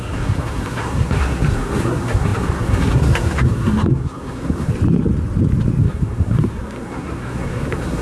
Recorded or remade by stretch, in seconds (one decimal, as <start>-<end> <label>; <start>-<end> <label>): 0.0-4.7 remade; 4.7-5.8 recorded; 5.8-8.0 remade